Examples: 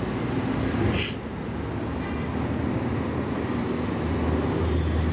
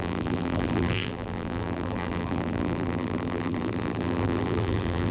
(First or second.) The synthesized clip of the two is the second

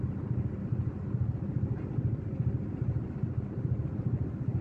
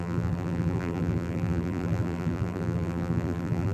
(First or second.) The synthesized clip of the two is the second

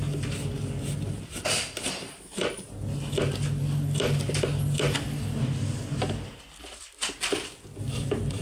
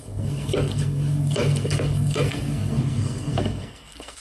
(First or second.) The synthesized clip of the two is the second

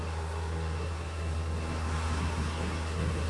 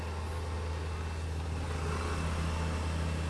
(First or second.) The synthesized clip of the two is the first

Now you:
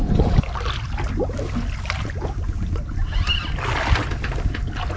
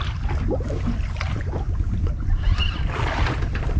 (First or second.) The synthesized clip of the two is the second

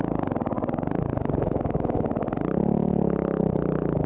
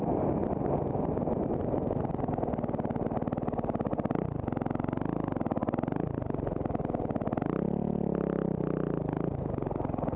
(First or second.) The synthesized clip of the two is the first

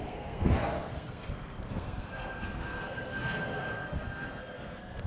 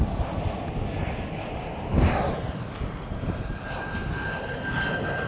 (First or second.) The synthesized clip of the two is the first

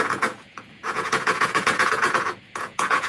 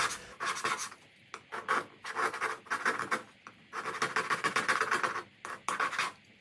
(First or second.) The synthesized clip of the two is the first